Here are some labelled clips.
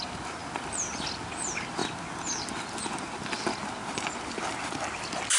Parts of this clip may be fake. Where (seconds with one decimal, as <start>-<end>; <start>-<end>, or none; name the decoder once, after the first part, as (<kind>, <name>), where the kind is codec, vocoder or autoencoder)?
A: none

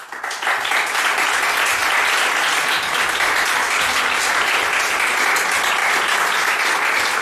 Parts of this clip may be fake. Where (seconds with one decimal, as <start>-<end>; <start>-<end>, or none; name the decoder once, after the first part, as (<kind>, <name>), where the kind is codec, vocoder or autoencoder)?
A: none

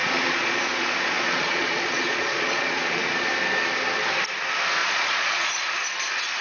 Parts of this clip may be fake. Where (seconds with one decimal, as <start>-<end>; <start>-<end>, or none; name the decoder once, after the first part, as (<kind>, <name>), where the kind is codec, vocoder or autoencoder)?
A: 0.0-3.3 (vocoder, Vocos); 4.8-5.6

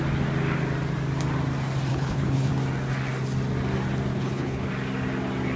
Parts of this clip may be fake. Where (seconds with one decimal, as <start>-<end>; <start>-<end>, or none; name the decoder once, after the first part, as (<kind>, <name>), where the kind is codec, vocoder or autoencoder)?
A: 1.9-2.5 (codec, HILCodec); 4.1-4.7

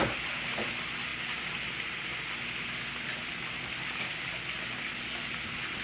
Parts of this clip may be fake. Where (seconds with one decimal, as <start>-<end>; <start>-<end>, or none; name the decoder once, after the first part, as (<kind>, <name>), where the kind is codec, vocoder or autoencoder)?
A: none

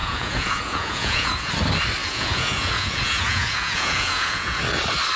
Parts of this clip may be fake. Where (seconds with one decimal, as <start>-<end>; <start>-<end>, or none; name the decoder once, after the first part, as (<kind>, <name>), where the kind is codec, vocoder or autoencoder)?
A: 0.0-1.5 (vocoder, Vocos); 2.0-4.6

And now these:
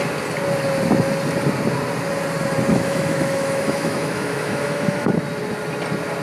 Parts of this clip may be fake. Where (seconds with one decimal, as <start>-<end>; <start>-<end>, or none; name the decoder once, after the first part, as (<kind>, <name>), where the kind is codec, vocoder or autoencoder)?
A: 2.7-5.1 (autoencoder, DAC-VAE)

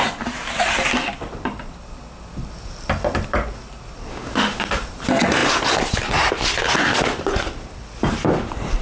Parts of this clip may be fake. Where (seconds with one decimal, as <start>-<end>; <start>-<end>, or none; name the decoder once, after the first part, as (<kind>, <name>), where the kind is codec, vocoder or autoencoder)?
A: 4.1-4.6 (autoencoder, DAC-VAE)